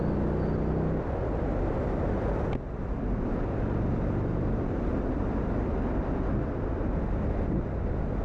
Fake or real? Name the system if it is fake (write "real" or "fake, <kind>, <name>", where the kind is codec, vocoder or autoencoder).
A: real